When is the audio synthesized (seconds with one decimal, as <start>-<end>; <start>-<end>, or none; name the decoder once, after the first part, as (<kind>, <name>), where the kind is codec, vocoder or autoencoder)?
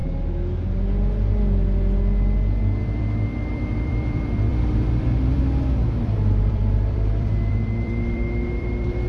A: 2.8-9.1 (vocoder, BigVGAN v2)